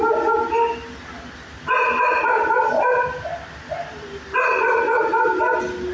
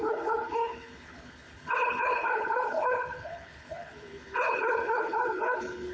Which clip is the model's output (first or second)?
second